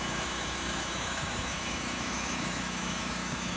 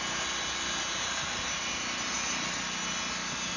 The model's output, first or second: first